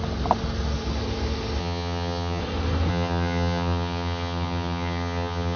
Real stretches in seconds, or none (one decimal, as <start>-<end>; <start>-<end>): 0.0-1.6; 2.4-2.9